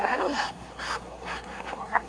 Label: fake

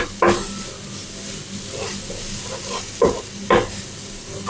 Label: real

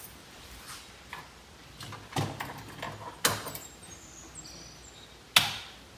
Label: real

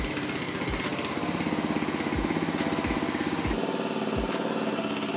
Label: real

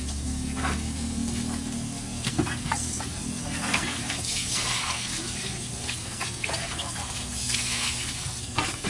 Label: fake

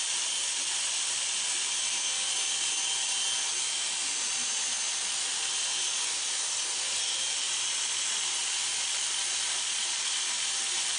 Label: real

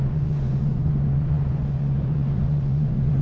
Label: fake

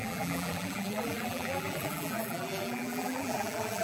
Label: fake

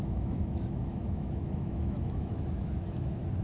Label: fake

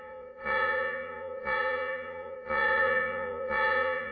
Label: fake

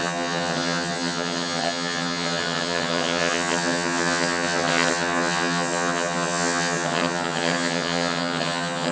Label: fake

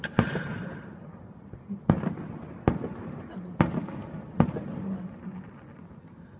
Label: real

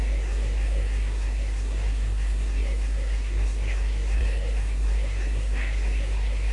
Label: fake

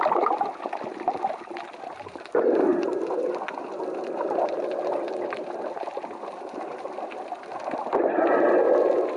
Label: real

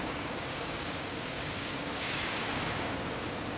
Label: fake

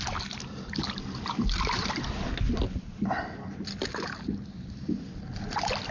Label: real